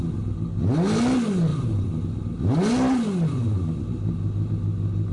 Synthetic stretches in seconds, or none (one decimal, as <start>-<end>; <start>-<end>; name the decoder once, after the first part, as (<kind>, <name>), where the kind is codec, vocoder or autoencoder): none